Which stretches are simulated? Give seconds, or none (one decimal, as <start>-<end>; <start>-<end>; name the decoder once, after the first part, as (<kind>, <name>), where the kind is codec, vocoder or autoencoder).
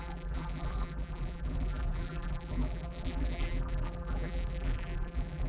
0.0-5.5 (vocoder, BigVGAN v2)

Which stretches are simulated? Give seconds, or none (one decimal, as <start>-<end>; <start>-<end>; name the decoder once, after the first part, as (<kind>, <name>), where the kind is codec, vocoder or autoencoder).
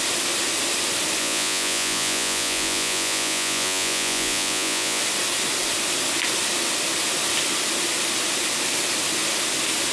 1.2-5.0 (vocoder, Vocos)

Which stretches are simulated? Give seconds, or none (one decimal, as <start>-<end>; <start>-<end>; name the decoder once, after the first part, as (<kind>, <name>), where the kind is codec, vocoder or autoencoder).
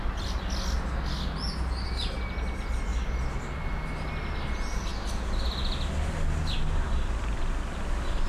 none